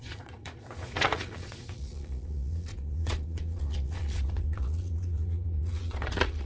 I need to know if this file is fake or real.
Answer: fake